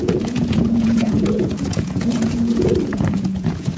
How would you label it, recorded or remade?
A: remade